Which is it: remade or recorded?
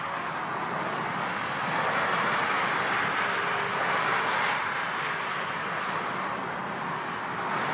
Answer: recorded